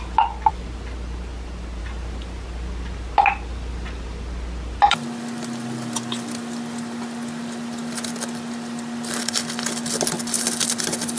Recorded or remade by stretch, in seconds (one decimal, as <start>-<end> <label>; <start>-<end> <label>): 0.0-11.2 recorded